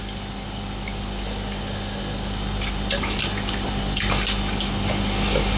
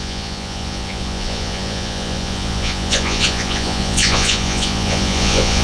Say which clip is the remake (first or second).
second